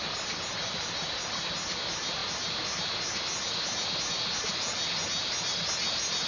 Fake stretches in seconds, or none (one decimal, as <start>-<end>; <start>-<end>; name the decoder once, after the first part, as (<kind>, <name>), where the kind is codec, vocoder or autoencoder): none